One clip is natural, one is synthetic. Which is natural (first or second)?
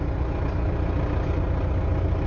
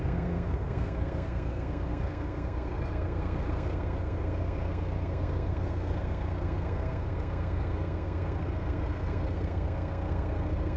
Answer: first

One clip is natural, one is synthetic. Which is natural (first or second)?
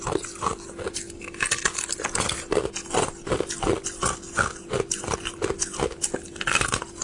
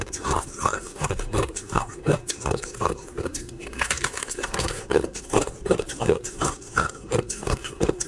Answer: first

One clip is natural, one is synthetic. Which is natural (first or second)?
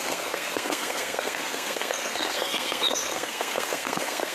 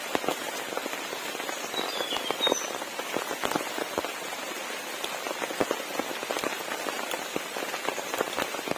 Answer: second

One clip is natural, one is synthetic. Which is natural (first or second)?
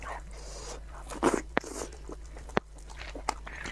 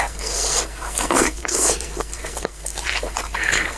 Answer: first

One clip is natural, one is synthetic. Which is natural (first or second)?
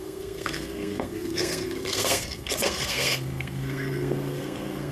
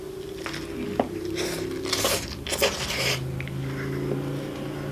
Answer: second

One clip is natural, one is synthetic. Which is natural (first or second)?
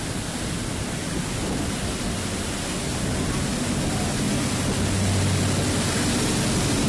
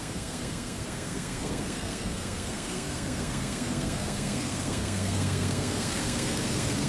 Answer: first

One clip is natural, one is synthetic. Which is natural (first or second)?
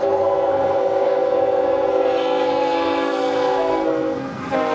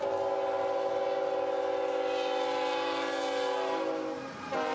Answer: second